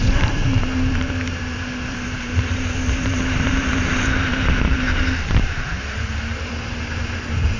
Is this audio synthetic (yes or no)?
yes